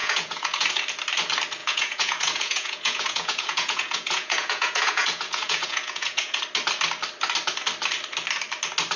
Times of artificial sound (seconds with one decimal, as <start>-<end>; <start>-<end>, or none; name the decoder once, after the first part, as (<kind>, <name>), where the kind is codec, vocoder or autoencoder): 0.0-0.7 (vocoder, Vocos); 1.6-6.4